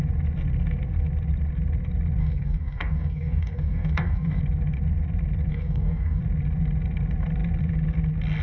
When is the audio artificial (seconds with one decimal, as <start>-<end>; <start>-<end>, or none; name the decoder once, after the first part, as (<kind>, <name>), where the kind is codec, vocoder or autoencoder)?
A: 2.2-4.4 (codec, DAC); 5.5-6.2

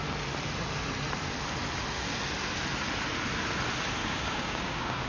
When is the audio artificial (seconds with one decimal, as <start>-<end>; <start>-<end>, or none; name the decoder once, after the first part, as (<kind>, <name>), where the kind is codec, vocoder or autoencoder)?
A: 4.0-5.1 (codec, DAC)

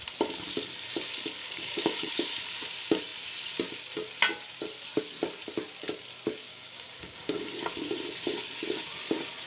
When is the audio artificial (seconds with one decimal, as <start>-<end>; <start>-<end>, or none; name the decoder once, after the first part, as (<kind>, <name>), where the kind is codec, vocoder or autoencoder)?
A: 1.4-2.1 (codec, DAC); 6.5-7.5

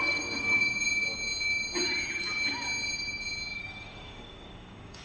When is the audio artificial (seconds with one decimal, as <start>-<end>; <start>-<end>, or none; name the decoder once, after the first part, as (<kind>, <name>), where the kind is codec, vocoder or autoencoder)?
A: 0.0-0.6 (codec, DAC); 3.6-5.0